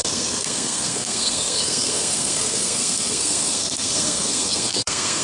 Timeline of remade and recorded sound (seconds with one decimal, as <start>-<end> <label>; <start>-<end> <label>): 0.0-5.2 remade